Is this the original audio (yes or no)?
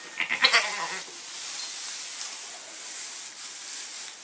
yes